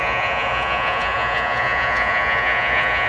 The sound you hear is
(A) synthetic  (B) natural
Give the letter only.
A